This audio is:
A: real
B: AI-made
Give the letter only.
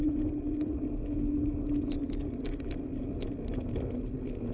A